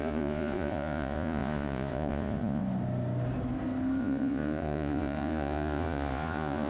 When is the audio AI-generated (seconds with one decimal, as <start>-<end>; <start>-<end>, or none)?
0.0-2.6; 4.0-6.7